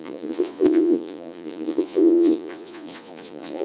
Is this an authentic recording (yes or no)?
no